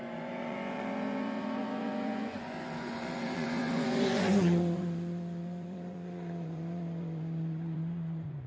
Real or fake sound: fake